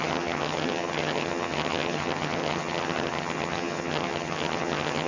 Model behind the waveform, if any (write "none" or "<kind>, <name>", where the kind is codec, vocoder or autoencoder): vocoder, HiFi-GAN